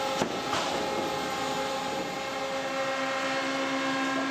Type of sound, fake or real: real